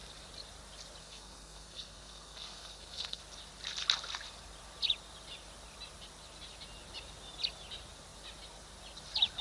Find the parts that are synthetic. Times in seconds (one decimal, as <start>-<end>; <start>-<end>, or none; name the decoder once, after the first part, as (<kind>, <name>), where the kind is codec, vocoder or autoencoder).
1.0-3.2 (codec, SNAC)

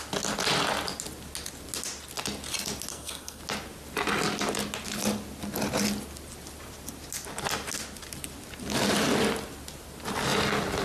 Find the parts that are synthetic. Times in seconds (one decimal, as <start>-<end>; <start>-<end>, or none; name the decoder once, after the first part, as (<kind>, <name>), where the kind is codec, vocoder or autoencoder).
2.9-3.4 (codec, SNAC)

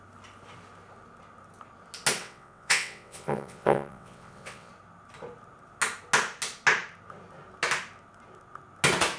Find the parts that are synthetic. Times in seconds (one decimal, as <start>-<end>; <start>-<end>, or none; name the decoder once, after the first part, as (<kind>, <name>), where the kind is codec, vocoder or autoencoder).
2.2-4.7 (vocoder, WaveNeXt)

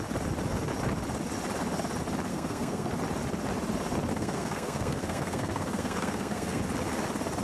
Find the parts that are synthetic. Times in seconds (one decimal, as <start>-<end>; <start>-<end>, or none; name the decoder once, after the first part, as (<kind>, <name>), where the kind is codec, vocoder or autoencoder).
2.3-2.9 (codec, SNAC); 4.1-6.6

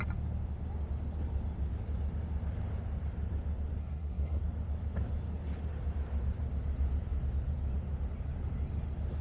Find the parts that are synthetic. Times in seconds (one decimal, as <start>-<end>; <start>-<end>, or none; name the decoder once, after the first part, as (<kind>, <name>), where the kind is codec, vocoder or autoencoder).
3.8-4.4 (codec, SNAC)